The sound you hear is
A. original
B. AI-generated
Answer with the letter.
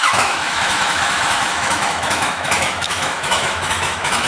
B